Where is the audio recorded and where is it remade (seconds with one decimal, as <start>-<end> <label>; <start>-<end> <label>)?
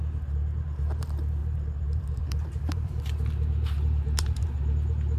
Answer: 0.0-1.4 recorded; 1.4-4.5 remade; 4.5-5.2 recorded